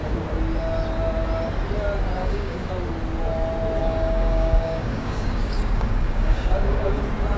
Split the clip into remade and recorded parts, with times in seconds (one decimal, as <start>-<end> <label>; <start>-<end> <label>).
0.0-2.2 recorded; 2.2-2.7 remade; 2.7-3.8 recorded; 3.8-7.0 remade; 7.0-7.4 recorded